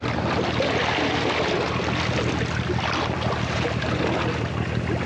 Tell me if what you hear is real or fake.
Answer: real